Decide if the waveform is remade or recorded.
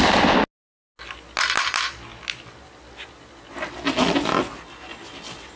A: recorded